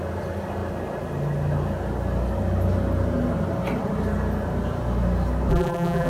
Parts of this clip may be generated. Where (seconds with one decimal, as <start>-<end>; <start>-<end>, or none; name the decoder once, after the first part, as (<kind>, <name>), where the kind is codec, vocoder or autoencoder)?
5.5-6.1 (vocoder, BigVGAN v2)